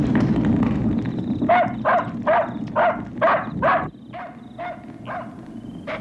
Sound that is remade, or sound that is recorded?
recorded